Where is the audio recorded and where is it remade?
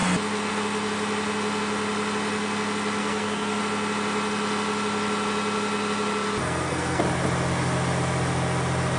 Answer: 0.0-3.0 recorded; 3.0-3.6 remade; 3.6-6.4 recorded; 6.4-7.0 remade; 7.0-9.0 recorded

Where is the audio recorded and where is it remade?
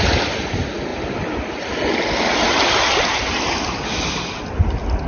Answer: 0.0-5.1 recorded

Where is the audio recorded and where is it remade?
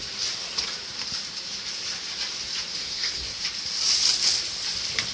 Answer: 0.0-2.8 recorded; 2.8-3.4 remade; 3.4-5.1 recorded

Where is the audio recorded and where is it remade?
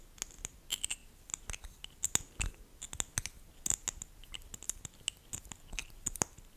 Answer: 0.0-6.6 recorded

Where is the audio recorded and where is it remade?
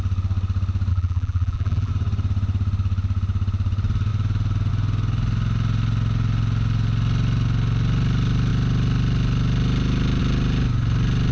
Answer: 0.0-0.9 recorded; 0.9-1.9 remade; 1.9-11.3 recorded